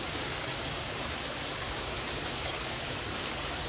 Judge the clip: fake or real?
fake